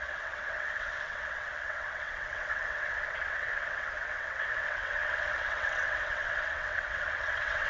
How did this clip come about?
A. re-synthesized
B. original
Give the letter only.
A